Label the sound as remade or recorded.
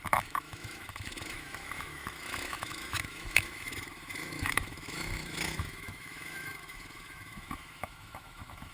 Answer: remade